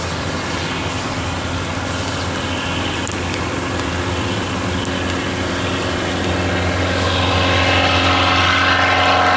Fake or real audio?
real